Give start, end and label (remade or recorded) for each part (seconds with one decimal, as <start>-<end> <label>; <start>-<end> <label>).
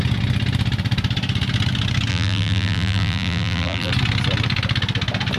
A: 0.0-2.1 recorded; 2.1-3.9 remade; 3.9-5.4 recorded